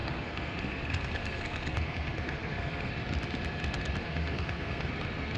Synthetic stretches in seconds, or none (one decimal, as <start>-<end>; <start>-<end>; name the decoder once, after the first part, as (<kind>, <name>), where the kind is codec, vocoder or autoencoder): 0.0-2.9 (codec, SNAC); 4.0-4.9